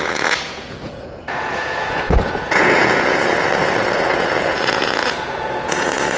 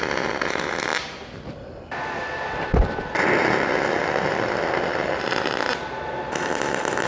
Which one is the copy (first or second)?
first